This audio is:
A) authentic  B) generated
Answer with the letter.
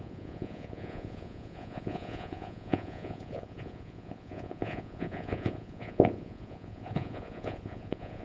B